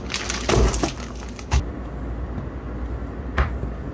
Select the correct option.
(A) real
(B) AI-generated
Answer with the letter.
A